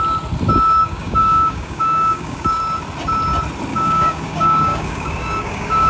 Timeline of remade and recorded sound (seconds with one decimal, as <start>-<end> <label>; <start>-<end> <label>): 0.0-0.8 recorded; 0.8-2.6 remade; 2.6-3.7 recorded; 3.7-5.9 remade